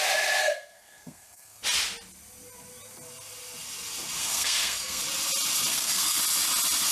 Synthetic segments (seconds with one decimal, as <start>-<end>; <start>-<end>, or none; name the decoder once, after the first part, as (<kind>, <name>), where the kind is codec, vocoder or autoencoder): 0.4-1.6 (codec, SNAC); 4.2-5.0; 5.7-6.2